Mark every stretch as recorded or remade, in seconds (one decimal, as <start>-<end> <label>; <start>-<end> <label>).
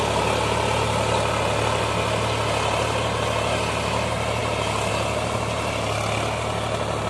0.0-7.1 recorded